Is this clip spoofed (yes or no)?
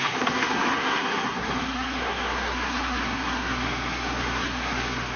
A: yes